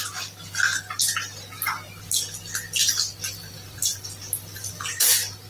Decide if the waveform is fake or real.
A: real